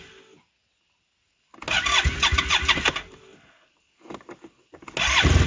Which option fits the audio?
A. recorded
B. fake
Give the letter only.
A